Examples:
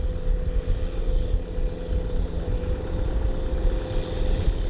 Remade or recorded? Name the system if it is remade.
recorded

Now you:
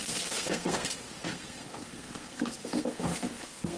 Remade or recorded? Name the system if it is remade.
remade, codec, SNAC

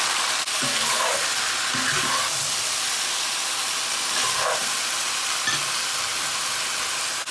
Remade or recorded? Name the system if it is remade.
recorded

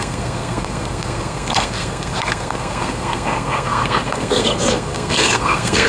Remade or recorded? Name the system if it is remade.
remade, codec, SNAC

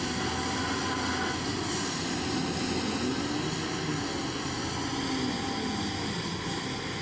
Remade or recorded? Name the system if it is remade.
recorded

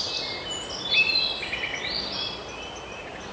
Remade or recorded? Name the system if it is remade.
recorded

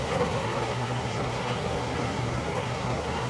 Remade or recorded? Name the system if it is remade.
remade, codec, SNAC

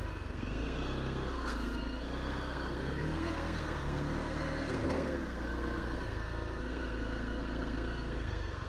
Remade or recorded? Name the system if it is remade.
remade, codec, SNAC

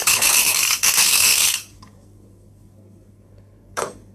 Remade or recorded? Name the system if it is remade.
remade, codec, SNAC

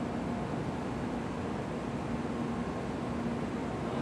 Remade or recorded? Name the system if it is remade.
recorded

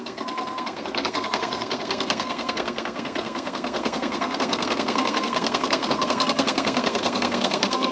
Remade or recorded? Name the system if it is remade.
remade, codec, SNAC